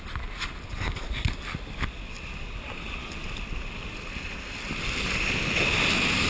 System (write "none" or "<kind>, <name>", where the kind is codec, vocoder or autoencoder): none